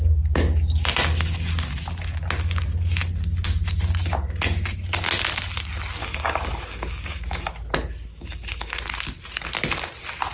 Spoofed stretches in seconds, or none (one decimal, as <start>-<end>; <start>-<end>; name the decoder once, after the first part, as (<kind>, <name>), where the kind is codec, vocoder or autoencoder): 6.0-7.5 (codec, DAC); 8.1-8.8

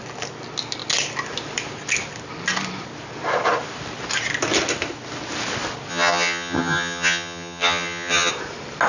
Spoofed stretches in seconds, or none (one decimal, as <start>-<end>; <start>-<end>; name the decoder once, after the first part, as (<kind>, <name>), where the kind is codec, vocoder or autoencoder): 5.9-8.3 (vocoder, HiFi-GAN)

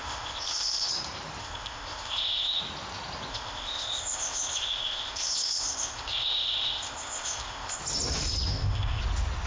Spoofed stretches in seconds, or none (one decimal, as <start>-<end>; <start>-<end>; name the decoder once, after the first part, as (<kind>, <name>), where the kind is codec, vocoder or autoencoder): 0.0-0.9 (codec, ZipCodec); 1.4-2.6; 3.3-7.8; 8.5-9.0

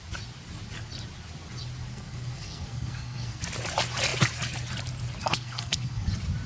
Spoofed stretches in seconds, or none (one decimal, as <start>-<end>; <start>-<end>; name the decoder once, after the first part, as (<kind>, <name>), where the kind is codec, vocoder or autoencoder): 1.9-3.4 (codec, SNAC); 5.2-6.1